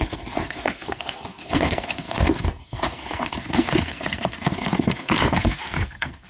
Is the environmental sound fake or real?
fake